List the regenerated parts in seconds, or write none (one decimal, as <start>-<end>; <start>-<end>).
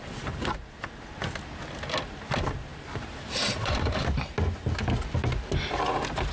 2.7-4.2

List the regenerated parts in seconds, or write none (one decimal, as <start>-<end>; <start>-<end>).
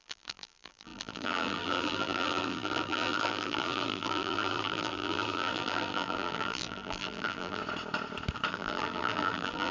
0.0-7.6; 8.5-9.7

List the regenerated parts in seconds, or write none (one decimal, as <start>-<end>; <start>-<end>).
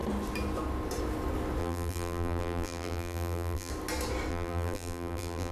1.6-3.7; 4.3-5.5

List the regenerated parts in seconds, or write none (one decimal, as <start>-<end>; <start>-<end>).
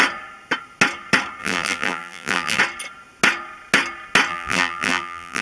1.4-2.6; 4.3-5.4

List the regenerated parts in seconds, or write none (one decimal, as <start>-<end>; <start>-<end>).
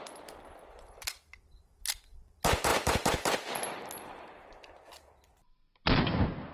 2.7-4.5